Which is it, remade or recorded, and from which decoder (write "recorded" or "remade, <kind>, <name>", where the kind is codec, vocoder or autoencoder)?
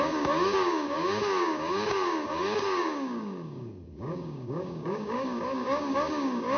remade, codec, DAC